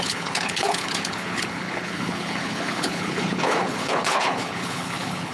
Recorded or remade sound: remade